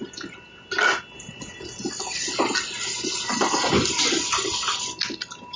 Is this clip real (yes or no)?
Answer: yes